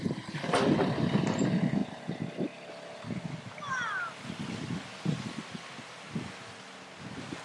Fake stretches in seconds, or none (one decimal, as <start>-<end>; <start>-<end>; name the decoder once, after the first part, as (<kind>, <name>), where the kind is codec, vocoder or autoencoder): none